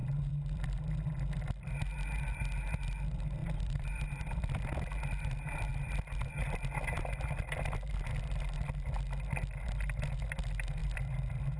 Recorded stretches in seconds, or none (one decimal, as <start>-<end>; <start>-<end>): 0.8-3.4; 4.6-10.8